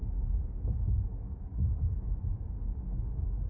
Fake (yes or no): yes